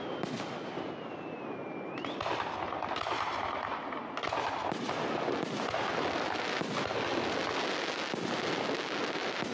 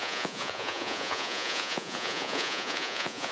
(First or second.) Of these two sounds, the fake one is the second